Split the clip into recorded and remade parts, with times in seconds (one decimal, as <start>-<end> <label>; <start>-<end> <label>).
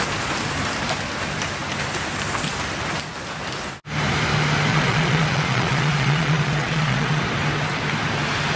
0.0-4.7 recorded; 4.7-7.2 remade; 7.2-8.6 recorded